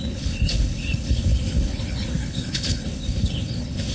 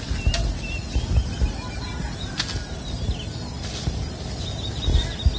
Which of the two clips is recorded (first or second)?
second